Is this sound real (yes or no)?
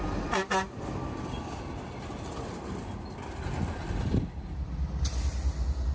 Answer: yes